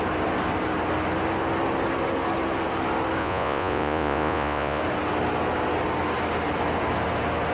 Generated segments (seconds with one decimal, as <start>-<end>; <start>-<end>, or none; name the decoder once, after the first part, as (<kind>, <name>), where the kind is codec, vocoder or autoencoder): 3.2-4.8 (vocoder, Vocos)

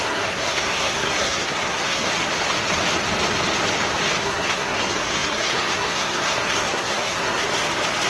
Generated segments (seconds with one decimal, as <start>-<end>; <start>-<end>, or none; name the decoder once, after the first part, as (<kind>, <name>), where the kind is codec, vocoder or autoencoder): 0.0-2.1 (codec, SNAC); 4.2-7.4

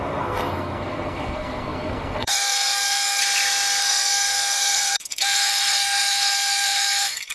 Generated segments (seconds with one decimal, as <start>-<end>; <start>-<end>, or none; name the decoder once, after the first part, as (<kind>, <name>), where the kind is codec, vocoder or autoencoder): 0.0-3.2 (codec, SNAC); 3.8-7.3